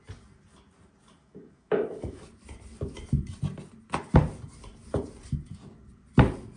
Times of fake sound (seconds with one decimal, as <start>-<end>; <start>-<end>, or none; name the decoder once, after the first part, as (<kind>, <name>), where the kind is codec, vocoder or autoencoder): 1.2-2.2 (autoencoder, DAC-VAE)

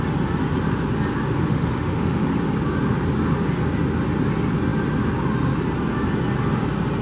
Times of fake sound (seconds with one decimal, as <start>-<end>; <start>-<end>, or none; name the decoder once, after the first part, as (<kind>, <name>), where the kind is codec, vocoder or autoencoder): 1.4-2.3 (autoencoder, DAC-VAE)

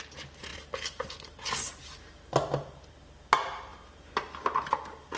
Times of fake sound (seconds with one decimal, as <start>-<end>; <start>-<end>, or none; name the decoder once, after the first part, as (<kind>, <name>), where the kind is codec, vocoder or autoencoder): none

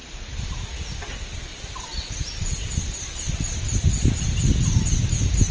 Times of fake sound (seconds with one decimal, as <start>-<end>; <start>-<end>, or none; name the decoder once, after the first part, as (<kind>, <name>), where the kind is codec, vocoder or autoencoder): 0.0-1.4 (vocoder, BigVGAN v2)

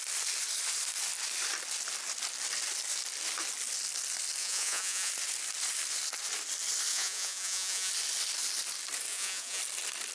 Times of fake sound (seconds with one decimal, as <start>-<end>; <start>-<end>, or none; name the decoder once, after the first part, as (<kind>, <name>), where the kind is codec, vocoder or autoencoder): 4.4-5.1 (vocoder, Vocos); 6.9-7.9; 9.1-9.6

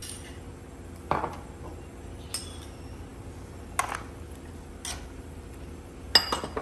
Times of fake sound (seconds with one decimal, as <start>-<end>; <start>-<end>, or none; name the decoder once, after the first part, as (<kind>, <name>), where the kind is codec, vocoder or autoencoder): none

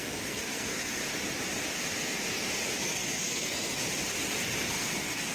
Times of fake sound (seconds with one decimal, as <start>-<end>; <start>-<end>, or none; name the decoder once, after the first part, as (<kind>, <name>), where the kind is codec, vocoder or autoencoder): 0.0-1.0 (codec, SNAC); 2.8-3.8; 4.7-5.3

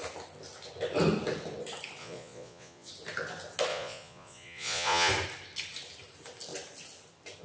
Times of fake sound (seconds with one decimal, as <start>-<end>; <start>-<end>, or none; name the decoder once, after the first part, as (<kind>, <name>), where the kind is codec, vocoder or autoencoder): 2.0-2.9 (vocoder, Vocos); 3.7-5.1